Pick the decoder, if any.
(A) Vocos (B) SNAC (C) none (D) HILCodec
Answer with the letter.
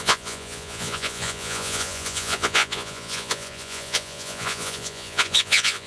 A